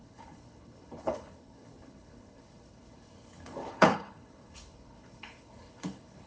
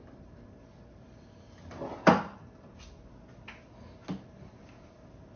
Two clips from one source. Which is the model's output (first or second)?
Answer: first